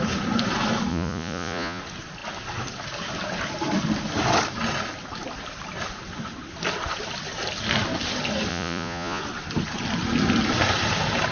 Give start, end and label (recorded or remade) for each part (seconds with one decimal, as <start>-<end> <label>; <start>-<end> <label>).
0.0-0.9 recorded; 0.9-1.8 remade; 1.8-8.5 recorded; 8.5-9.2 remade; 9.2-11.3 recorded